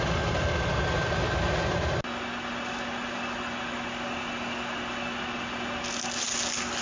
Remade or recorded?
recorded